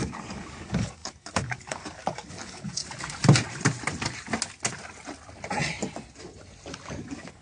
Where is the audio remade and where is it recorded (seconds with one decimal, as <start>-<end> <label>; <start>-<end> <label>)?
0.0-2.8 remade; 2.8-6.9 recorded; 6.9-7.4 remade